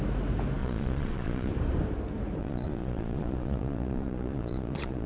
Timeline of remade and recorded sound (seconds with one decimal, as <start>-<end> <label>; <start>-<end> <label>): 0.0-0.6 recorded; 0.6-1.5 remade; 1.5-2.4 recorded; 2.4-5.1 remade